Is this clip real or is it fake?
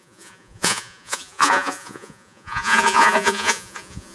fake